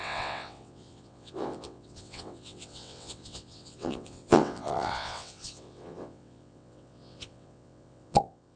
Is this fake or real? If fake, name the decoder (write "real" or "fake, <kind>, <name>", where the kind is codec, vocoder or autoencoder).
fake, vocoder, WaveNeXt